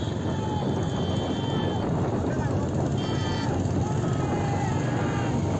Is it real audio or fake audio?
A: real